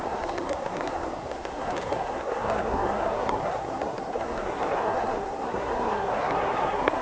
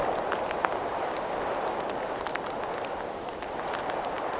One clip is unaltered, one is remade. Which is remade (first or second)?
first